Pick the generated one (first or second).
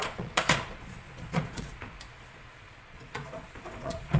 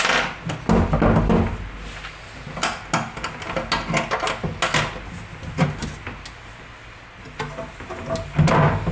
first